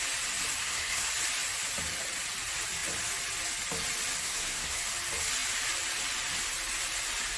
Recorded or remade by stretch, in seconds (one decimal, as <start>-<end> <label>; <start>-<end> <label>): 0.0-0.6 recorded; 0.6-1.1 remade; 1.1-4.2 recorded; 4.2-4.8 remade; 4.8-7.4 recorded